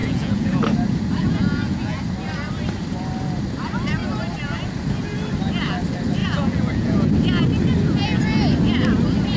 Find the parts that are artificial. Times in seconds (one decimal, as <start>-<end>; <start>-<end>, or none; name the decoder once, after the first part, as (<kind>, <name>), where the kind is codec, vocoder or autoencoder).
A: 0.0-0.6 (vocoder, Vocos); 1.2-2.0; 6.2-7.1